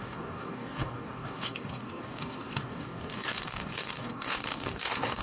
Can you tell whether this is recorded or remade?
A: remade